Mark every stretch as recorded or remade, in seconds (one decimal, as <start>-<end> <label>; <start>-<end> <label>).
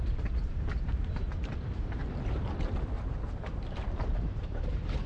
0.0-2.0 remade; 2.0-3.1 recorded; 3.1-5.1 remade